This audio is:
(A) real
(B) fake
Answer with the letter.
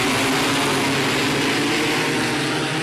A